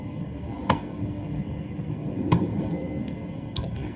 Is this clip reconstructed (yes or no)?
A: yes